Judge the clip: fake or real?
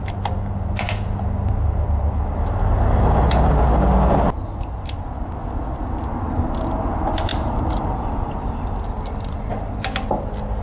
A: real